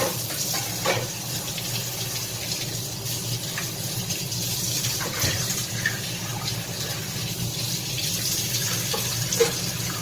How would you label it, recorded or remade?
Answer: recorded